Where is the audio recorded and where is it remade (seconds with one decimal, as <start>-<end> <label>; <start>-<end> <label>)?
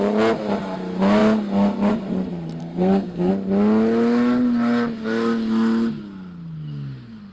0.0-2.6 recorded; 2.6-3.3 remade; 3.3-7.3 recorded